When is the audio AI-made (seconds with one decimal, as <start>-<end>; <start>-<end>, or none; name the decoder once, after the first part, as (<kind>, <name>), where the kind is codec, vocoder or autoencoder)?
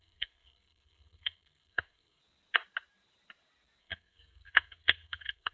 0.0-2.2 (codec, SNAC); 3.8-5.5